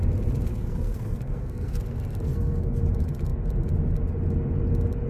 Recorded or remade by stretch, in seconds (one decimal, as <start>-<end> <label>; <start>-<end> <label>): 0.0-0.5 recorded; 0.5-2.8 remade; 2.8-5.1 recorded